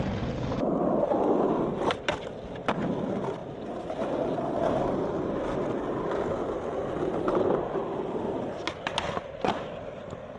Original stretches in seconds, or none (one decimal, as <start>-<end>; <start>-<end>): 0.0-10.4